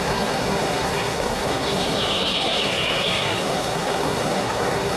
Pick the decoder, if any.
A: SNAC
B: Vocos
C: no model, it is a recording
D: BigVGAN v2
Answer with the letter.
A